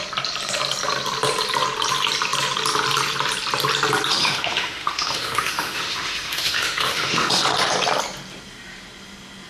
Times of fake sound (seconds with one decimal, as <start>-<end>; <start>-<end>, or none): 4.2-7.3